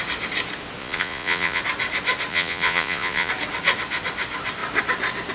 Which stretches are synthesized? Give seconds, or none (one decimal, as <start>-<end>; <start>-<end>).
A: 0.8-1.6; 2.3-3.3